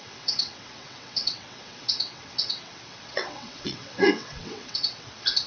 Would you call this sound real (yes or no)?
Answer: no